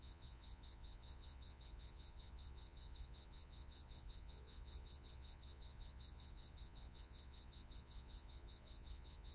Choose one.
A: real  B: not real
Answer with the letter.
B